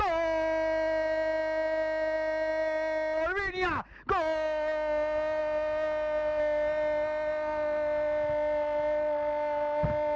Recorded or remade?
recorded